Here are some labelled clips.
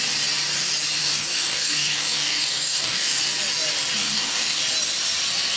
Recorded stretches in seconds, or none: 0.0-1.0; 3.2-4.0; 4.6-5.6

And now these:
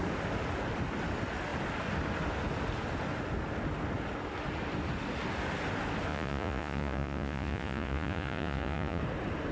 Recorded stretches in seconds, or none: 0.0-6.1; 9.0-9.5

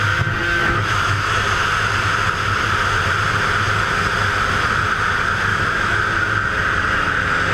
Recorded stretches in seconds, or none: 0.0-0.6; 1.3-5.5; 6.0-7.5

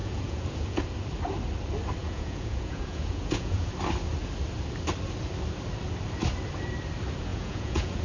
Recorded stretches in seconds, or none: 0.8-2.0; 3.7-7.3

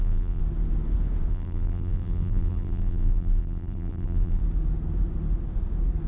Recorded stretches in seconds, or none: 0.4-1.3; 4.4-6.1

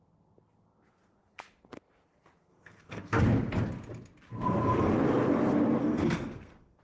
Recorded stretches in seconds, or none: 0.0-2.5; 3.2-5.8